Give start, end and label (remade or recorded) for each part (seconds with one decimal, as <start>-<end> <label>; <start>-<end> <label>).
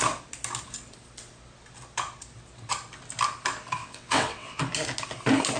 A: 0.0-3.8 recorded; 3.8-4.6 remade; 4.6-5.6 recorded